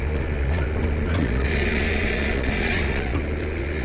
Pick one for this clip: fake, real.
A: fake